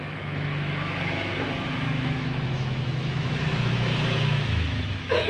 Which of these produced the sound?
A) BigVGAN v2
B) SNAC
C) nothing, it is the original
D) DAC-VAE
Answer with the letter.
D